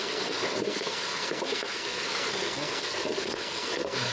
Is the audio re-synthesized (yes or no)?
yes